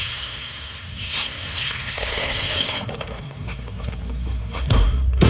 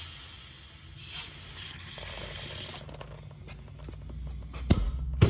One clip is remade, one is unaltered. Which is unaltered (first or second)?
second